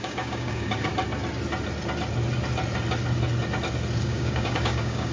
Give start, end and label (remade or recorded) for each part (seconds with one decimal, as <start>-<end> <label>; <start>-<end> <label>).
0.0-0.9 remade; 0.9-4.0 recorded; 4.0-5.1 remade